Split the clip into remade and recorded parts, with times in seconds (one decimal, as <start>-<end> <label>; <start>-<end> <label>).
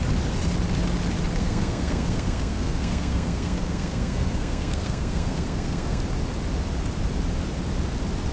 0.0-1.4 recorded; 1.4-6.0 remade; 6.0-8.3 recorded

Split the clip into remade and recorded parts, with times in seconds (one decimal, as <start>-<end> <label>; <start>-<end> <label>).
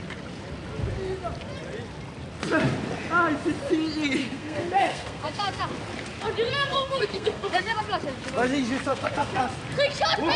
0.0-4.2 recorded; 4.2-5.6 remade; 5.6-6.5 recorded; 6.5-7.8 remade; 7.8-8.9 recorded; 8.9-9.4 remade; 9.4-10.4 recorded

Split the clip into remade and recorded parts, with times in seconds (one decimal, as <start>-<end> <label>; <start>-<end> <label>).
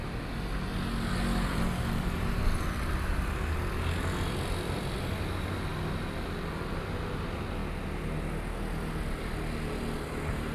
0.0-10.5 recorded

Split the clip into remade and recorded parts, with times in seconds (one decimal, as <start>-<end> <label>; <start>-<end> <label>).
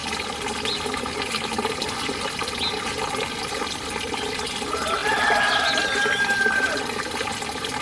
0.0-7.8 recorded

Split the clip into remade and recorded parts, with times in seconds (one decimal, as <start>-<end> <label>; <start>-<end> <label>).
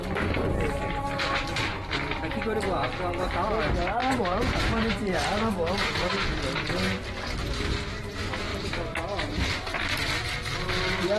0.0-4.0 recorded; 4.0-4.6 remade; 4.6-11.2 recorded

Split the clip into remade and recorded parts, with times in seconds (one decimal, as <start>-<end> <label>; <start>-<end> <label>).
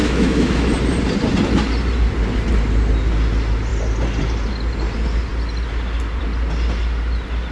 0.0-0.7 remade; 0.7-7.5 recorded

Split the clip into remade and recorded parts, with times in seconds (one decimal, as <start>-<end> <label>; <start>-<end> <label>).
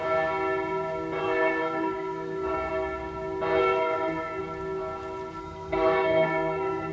0.0-1.2 recorded; 1.2-2.7 remade; 2.7-3.6 recorded; 3.6-4.4 remade; 4.4-5.4 recorded; 5.4-6.9 remade